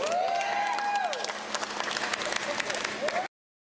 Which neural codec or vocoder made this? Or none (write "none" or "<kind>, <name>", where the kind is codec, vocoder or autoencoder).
none